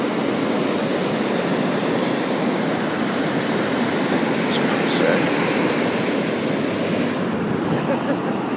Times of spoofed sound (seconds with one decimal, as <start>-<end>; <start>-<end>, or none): none